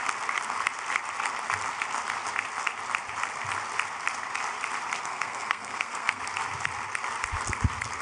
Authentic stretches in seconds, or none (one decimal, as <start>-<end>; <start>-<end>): 0.0-5.0; 6.2-8.0